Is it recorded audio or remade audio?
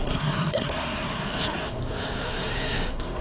remade